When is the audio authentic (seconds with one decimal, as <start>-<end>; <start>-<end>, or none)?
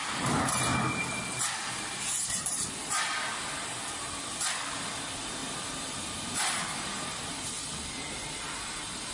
0.0-5.4; 7.5-9.1